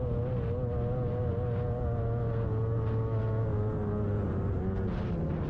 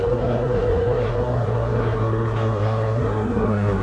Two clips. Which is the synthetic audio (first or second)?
second